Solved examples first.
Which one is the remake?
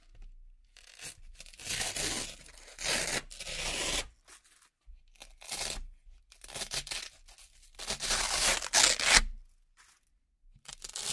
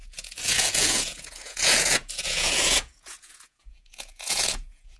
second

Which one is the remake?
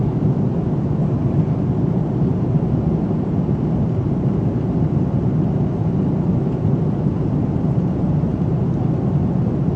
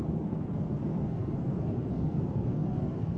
second